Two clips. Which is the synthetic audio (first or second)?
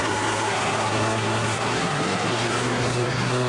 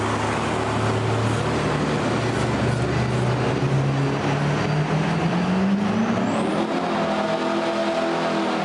first